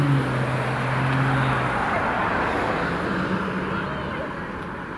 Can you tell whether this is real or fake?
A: real